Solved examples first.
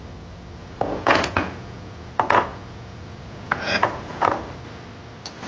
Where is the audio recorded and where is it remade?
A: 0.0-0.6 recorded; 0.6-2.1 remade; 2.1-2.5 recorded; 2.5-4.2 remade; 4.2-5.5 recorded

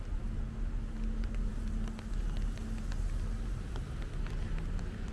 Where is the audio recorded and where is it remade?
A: 0.0-5.1 recorded

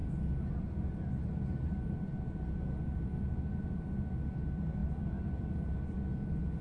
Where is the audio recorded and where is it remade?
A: 0.0-2.1 recorded; 2.1-3.6 remade; 3.6-4.8 recorded; 4.8-5.4 remade; 5.4-6.6 recorded